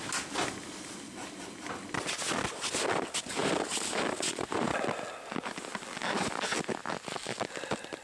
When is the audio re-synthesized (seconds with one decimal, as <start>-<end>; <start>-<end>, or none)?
none